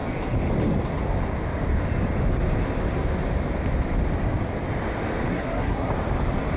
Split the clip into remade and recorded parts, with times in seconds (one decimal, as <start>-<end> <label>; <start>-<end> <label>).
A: 0.0-5.3 recorded; 5.3-5.9 remade; 5.9-6.6 recorded